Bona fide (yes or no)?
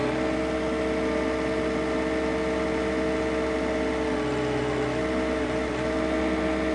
yes